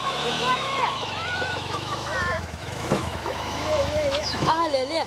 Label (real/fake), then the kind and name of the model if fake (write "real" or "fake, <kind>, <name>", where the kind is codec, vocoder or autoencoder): fake, autoencoder, DAC-VAE